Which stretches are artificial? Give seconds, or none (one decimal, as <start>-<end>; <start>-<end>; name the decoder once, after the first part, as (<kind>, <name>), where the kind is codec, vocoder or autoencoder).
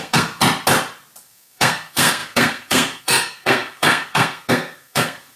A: 0.0-0.4 (codec, SNAC); 1.2-5.4